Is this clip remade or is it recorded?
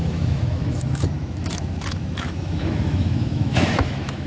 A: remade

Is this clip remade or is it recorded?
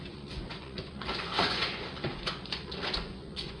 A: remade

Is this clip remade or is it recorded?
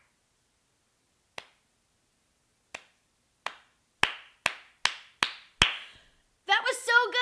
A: recorded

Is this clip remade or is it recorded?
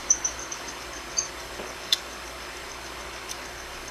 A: remade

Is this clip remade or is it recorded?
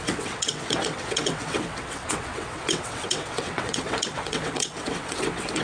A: remade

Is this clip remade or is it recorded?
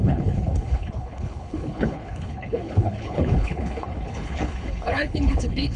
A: remade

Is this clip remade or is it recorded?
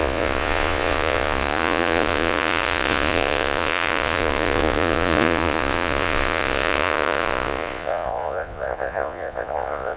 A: remade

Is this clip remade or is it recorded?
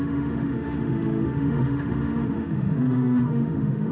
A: remade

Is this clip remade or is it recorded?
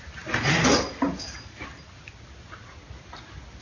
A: recorded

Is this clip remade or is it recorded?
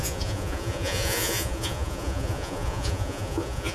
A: remade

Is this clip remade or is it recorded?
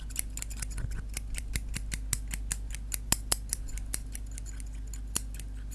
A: recorded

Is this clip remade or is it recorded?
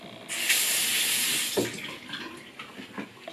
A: recorded